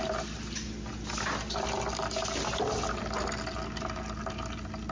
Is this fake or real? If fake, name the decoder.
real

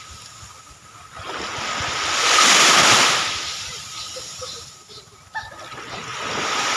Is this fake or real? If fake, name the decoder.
real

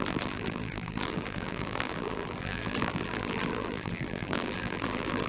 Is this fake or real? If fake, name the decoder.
fake, vocoder, BigVGAN v2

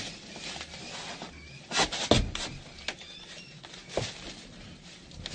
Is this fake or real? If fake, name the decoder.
real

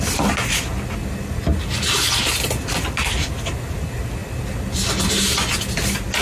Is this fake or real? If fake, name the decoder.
real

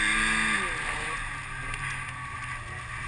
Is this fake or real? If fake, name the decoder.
real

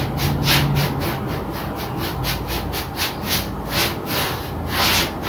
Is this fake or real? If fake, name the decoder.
real